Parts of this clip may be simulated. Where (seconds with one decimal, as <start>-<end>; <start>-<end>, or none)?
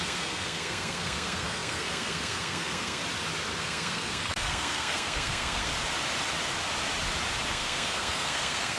0.0-3.0; 3.6-5.7; 7.5-8.8